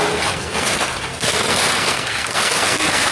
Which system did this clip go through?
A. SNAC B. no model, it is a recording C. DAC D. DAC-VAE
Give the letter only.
A